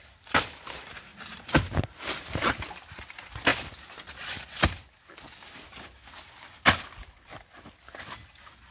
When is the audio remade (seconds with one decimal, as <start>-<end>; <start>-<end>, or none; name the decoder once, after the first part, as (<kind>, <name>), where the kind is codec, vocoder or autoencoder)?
none